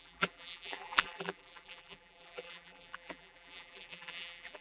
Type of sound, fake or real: fake